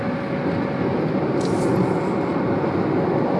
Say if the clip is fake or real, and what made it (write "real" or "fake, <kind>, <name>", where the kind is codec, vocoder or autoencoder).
real